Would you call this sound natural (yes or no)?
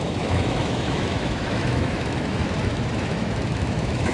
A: no